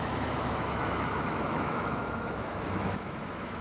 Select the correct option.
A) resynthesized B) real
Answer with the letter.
A